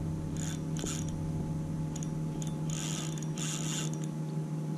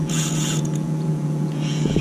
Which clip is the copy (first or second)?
second